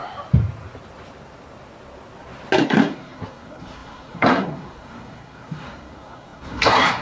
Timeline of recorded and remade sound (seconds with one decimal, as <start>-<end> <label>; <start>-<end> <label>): 0.0-2.6 recorded; 2.6-7.0 remade